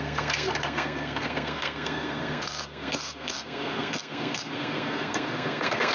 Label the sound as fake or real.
fake